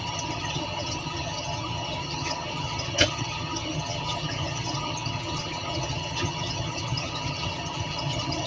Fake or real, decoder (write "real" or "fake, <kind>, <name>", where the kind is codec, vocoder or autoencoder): fake, vocoder, HiFi-GAN